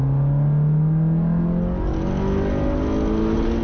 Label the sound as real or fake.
real